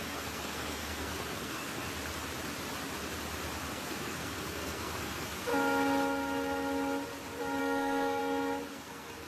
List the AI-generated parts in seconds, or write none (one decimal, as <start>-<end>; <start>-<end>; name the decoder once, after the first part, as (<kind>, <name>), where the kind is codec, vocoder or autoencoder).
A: 0.0-1.9 (codec, SNAC); 3.7-5.5; 7.6-8.2; 8.7-9.3